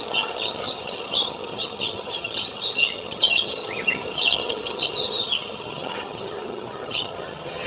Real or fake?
fake